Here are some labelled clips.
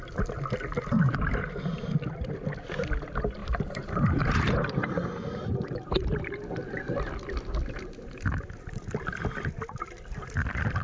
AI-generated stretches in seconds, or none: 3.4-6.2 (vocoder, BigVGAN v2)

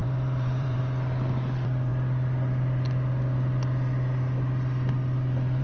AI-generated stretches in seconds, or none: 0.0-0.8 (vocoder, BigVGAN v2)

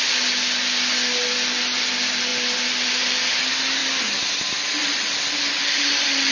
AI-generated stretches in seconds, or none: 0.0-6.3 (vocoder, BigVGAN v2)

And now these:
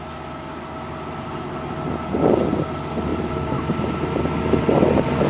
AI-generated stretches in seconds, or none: 3.1-4.1 (vocoder, BigVGAN v2)

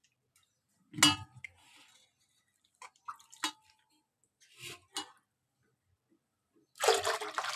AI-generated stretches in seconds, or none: none